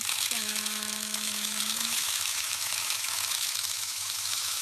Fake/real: fake